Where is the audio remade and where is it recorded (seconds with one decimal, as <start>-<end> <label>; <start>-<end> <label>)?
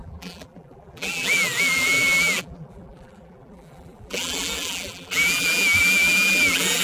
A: 0.0-6.8 remade